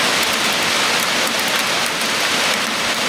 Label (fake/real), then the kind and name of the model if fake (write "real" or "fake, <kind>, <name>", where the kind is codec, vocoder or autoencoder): real